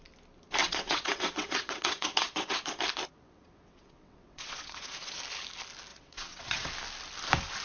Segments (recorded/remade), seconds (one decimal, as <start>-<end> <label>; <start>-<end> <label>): 0.0-0.6 recorded; 0.6-2.6 remade; 2.6-3.1 recorded; 3.1-5.2 remade; 5.2-5.9 recorded; 5.9-6.7 remade; 6.7-7.6 recorded